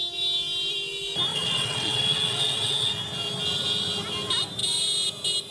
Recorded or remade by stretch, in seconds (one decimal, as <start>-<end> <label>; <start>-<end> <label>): 0.0-1.3 recorded; 1.3-2.9 remade; 2.9-5.5 recorded